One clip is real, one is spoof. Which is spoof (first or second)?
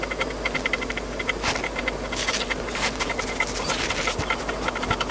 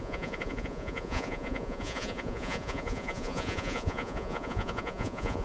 second